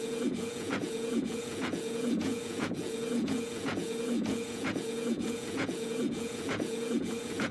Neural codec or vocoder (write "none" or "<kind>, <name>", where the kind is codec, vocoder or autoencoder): vocoder, Vocos